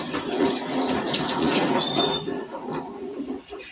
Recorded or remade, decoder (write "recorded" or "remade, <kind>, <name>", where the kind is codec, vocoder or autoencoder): remade, vocoder, Vocos